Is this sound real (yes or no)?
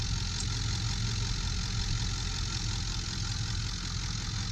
yes